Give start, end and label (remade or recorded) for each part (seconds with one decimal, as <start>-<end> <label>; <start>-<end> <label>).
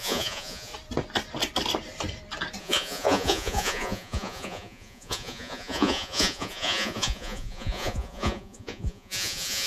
0.0-0.7 remade; 0.7-2.6 recorded; 2.6-9.7 remade